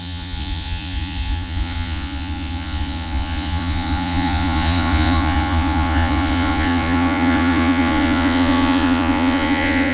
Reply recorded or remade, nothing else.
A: remade